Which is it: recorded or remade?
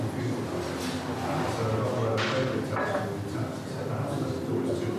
recorded